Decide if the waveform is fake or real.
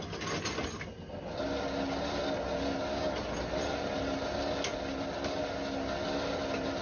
real